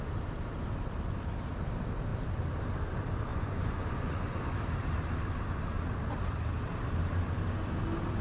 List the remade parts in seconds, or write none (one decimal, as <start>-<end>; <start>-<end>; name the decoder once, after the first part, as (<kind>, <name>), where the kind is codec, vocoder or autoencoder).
3.3-4.4 (vocoder, Vocos)